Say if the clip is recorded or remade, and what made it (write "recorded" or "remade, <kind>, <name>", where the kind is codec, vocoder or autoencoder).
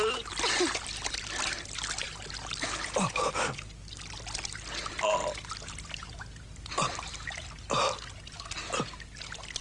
recorded